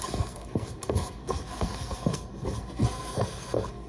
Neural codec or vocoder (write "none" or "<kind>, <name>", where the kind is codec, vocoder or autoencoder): codec, SNAC